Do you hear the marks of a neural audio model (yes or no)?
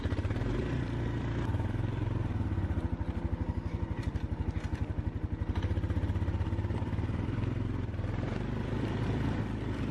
yes